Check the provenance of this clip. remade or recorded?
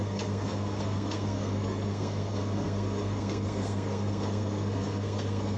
remade